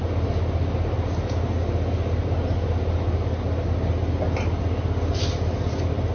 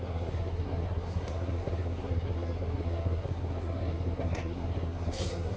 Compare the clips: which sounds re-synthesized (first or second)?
second